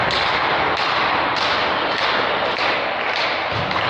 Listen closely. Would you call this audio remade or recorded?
recorded